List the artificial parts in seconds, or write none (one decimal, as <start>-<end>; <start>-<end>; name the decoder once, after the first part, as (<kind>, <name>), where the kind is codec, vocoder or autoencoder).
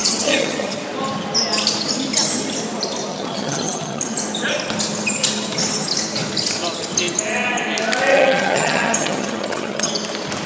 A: 0.0-0.8 (vocoder, HiFi-GAN); 3.1-4.0; 8.1-9.9